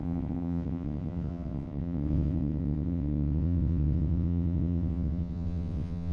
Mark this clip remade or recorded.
remade